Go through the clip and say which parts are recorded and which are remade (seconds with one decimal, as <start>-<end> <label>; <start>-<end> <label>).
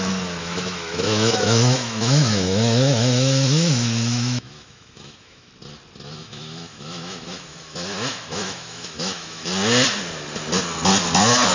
0.0-0.4 recorded; 0.4-5.5 remade; 5.5-6.2 recorded; 6.2-9.5 remade; 9.5-11.5 recorded